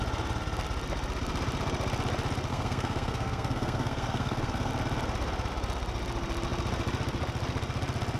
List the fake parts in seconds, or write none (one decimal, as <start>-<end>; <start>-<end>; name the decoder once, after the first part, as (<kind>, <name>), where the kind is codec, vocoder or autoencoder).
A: 2.5-4.7 (codec, SNAC)